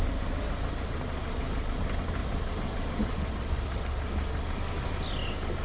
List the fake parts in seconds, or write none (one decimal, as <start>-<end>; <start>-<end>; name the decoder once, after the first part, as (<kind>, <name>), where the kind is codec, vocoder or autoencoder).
2.2-3.8 (vocoder, BigVGAN v2)